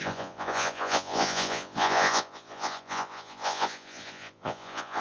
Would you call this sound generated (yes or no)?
yes